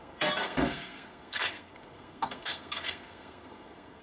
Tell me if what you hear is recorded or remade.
remade